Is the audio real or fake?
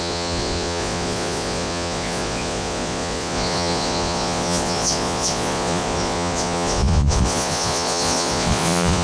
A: fake